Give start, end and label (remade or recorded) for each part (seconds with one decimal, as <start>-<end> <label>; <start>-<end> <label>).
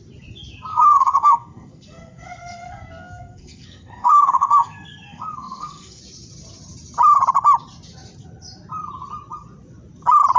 0.0-0.7 recorded; 0.7-6.0 remade; 6.0-10.4 recorded